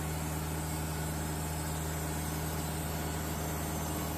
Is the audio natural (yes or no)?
yes